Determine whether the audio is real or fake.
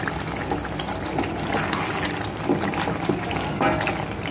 real